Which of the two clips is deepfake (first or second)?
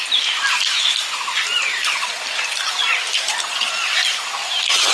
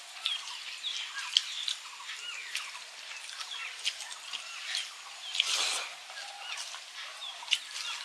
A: first